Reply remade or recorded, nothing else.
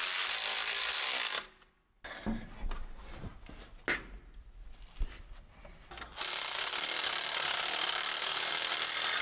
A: recorded